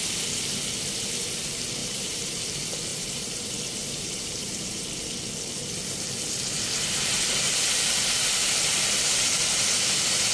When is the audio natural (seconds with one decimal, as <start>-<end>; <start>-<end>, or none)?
0.0-1.8; 2.4-2.9; 3.4-3.8; 4.9-10.3